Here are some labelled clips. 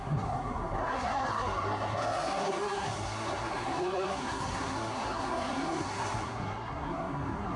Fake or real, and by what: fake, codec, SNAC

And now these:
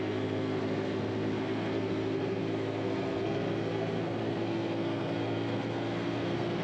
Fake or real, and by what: fake, codec, SNAC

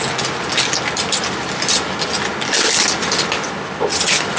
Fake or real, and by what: real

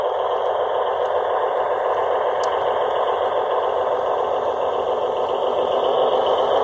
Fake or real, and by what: real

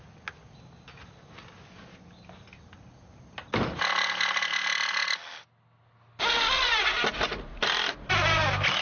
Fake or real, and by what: real